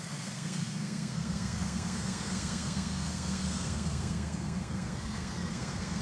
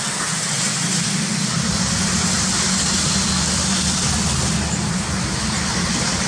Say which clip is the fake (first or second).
first